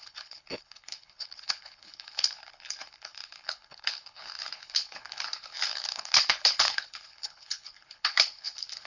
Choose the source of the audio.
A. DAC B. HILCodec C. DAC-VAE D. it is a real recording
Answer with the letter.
B